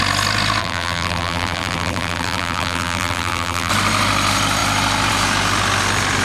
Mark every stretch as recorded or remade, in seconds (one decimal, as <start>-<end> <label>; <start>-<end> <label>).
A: 0.0-0.6 recorded; 0.6-3.7 remade; 3.7-6.2 recorded